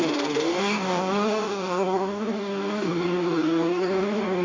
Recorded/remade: remade